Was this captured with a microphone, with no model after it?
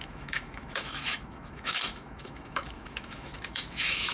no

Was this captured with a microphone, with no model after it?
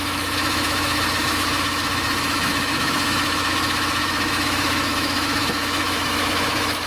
no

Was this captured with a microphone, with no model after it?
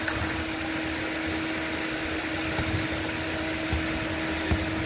yes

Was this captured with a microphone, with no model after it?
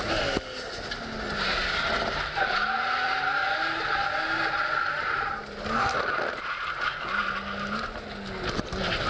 yes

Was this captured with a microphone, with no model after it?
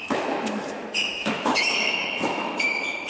no